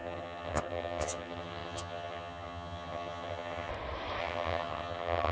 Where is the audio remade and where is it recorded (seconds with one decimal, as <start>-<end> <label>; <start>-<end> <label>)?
0.0-3.7 remade; 3.7-4.2 recorded; 4.2-5.3 remade